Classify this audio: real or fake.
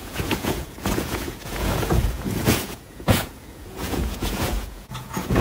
fake